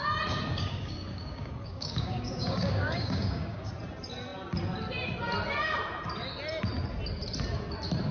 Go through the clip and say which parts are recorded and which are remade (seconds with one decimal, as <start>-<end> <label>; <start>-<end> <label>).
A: 0.0-0.5 recorded; 0.5-3.7 remade; 3.7-8.1 recorded